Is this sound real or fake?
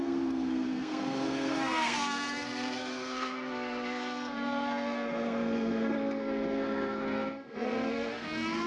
fake